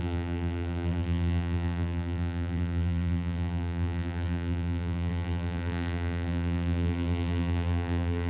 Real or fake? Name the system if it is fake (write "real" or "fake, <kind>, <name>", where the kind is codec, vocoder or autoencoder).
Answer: fake, vocoder, BigVGAN v2